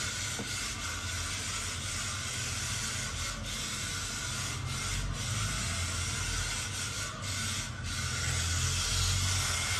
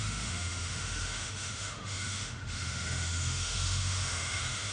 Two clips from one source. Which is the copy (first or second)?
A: second